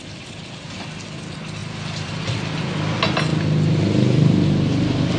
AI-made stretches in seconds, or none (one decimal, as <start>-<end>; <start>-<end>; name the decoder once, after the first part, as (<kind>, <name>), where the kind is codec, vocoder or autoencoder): none

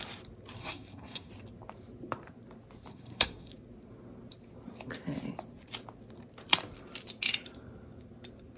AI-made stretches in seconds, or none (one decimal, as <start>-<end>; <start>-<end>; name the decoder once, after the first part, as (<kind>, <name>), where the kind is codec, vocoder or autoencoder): 0.6-1.3 (codec, SNAC); 2.9-3.5